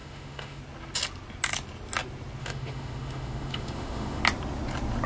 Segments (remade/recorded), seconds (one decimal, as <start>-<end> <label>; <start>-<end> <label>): 0.0-0.6 remade; 0.6-2.4 recorded; 2.4-4.2 remade; 4.2-5.1 recorded